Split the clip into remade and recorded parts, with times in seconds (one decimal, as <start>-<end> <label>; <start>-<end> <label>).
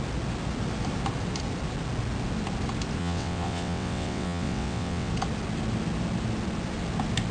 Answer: 0.0-3.0 recorded; 3.0-5.1 remade; 5.1-7.3 recorded